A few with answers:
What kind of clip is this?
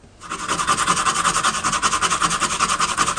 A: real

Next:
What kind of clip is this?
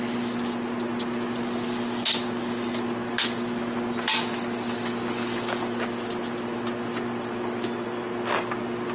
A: real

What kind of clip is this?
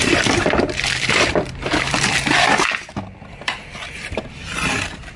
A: fake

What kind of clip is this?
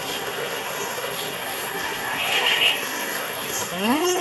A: fake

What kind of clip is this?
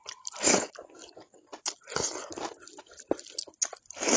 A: real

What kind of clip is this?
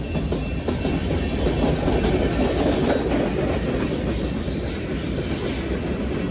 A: real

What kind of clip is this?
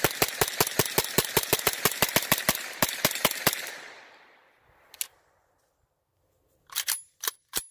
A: real